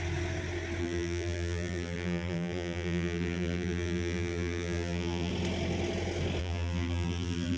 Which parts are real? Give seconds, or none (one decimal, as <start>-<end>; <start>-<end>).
0.0-0.8; 5.3-6.4